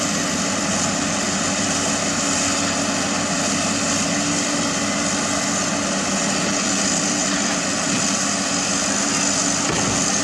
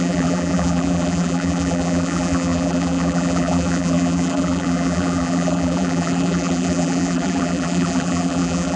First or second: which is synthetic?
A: second